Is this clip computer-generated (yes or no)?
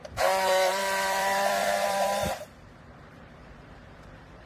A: yes